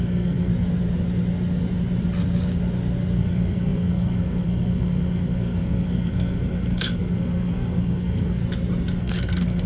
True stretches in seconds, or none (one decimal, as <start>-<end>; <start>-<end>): 0.5-3.2; 8.4-9.0